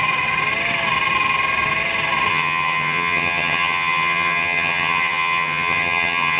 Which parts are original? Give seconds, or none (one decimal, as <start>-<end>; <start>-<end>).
0.0-2.3